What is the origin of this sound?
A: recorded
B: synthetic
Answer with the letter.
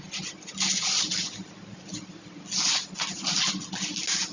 A